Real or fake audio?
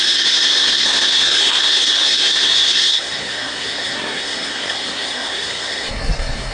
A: fake